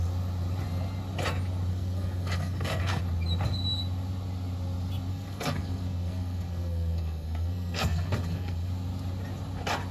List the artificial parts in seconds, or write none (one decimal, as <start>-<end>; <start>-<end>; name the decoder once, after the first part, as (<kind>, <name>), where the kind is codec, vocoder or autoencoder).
1.7-3.0 (codec, SNAC); 5.1-8.7